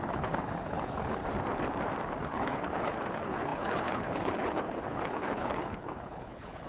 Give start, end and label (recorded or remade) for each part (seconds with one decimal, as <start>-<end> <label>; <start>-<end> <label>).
0.0-1.2 remade; 1.2-2.2 recorded; 2.2-6.7 remade